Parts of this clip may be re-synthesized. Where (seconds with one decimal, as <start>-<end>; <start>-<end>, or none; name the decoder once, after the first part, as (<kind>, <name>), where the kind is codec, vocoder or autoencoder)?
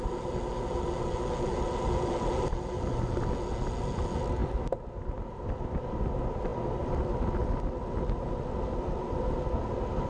none